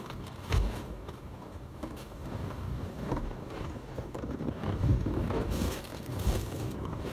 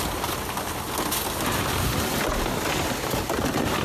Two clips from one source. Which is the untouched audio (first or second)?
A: second